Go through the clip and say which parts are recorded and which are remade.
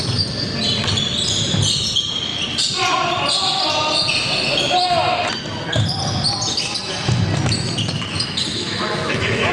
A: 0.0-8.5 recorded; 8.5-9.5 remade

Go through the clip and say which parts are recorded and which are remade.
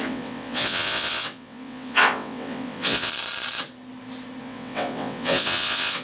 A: 0.0-3.1 remade; 3.1-4.4 recorded; 4.4-6.0 remade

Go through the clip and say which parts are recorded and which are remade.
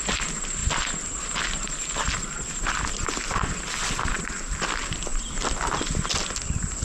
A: 0.0-6.8 recorded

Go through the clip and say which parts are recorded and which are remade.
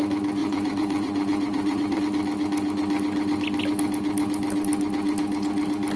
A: 0.0-0.4 recorded; 0.4-2.0 remade; 2.0-6.0 recorded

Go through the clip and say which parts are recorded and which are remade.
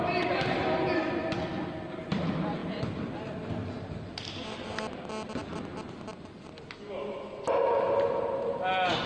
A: 0.0-9.1 recorded